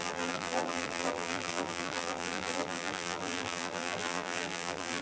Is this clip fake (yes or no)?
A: yes